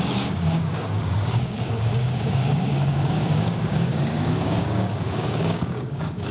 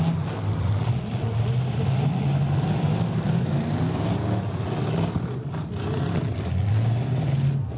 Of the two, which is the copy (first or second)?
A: first